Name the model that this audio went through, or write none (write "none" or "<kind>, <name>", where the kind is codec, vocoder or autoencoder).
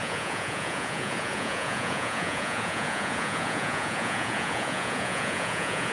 vocoder, Vocos